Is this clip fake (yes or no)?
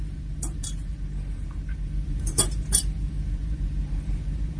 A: yes